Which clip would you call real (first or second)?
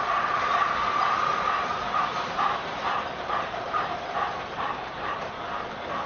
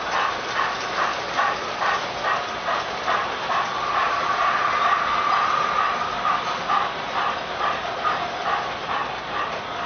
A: second